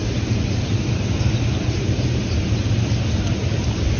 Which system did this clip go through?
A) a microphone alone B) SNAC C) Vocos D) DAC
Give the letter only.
A